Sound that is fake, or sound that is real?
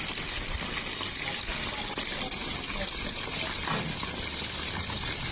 real